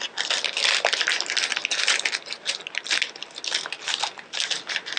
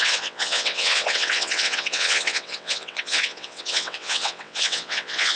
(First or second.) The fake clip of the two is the second